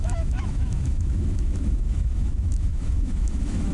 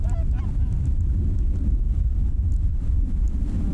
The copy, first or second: first